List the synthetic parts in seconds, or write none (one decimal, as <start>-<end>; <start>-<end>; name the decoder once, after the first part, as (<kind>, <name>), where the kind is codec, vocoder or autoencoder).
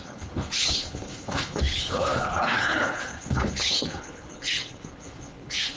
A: 0.0-5.8 (codec, HILCodec)